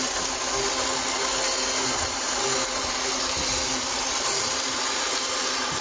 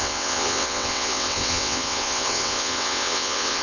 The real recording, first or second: first